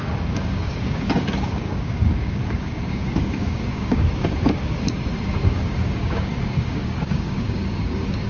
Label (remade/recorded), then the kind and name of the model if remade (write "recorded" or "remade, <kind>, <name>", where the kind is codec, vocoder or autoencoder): remade, codec, DAC